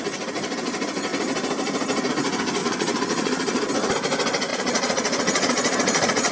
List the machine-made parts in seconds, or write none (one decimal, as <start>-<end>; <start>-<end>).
2.6-3.7; 4.5-6.3